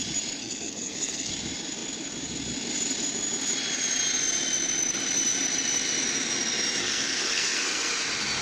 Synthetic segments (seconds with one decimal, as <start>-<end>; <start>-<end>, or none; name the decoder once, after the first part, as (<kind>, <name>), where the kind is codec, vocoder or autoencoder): 0.4-1.3 (codec, SNAC); 6.8-7.9